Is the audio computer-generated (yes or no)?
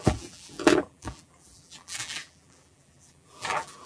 yes